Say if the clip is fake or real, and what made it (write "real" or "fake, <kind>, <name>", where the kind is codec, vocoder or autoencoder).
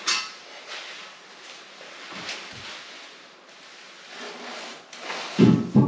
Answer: real